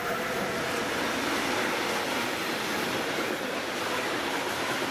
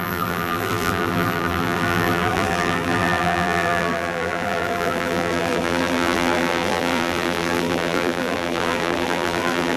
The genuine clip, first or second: first